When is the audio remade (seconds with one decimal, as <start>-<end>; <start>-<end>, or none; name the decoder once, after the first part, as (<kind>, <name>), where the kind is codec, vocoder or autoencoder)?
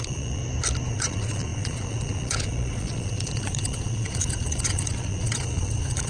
0.0-0.4 (vocoder, Vocos); 0.9-6.1